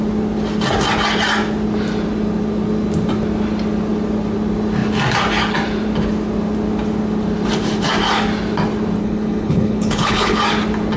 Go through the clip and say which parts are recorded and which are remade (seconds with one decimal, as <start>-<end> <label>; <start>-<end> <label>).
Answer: 0.0-9.0 recorded; 9.0-10.4 remade; 10.4-11.0 recorded